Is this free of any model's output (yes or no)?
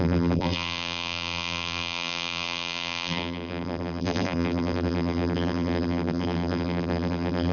no